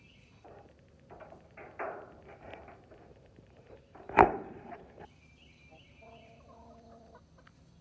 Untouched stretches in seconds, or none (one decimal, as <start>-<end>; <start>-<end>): 0.0-3.1; 6.1-7.8